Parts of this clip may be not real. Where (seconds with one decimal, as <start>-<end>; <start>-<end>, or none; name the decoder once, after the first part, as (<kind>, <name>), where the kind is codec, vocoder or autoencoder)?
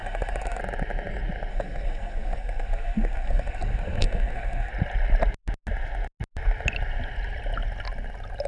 0.0-0.6 (codec, SNAC); 1.5-4.7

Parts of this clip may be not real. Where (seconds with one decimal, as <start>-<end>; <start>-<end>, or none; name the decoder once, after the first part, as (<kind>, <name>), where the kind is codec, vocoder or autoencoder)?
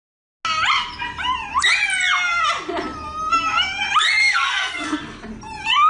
4.2-5.0 (codec, SNAC)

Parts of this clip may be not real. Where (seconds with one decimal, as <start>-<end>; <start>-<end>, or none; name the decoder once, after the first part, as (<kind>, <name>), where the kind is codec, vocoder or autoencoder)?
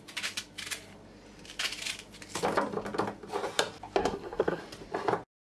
4.0-4.6 (codec, SNAC)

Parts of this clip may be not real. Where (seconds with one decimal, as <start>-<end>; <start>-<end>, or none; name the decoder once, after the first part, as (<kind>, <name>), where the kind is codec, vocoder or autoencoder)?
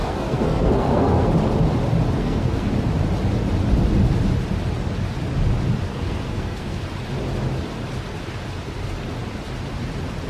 0.0-1.3 (codec, SNAC); 2.2-2.7; 5.9-6.8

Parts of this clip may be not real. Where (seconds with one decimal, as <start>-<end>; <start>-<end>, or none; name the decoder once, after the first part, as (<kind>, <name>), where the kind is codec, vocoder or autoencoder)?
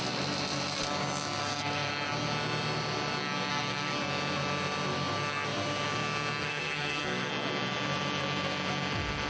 1.4-1.9 (codec, SNAC); 3.5-4.0; 6.4-7.3